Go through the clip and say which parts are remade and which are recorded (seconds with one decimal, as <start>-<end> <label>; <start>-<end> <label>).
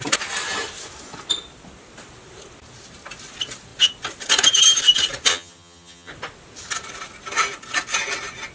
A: 0.0-5.3 recorded; 5.3-6.1 remade; 6.1-8.5 recorded